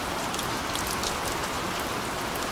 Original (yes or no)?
yes